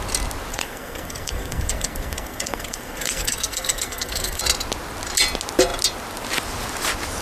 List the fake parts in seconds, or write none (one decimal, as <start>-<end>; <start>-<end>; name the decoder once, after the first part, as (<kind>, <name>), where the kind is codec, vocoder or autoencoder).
0.5-4.4 (codec, SNAC)